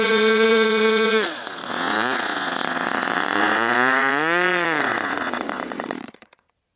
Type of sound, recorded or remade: remade